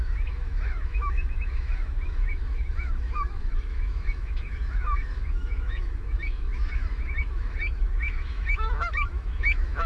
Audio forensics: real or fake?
fake